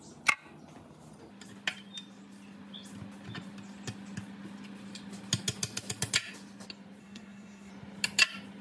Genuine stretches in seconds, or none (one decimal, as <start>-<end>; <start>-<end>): 0.0-7.0; 7.7-8.6